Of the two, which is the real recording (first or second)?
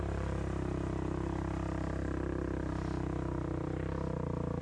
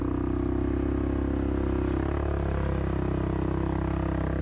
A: second